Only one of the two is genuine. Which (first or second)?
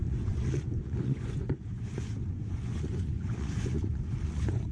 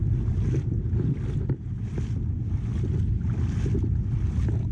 second